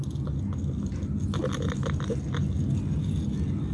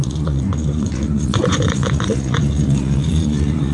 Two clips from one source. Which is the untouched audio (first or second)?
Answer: first